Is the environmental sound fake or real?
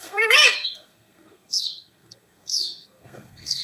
fake